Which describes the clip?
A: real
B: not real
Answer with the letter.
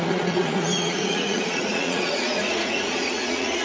B